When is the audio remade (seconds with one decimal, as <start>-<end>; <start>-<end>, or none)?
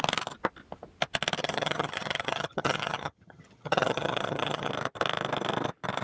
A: 1.4-4.7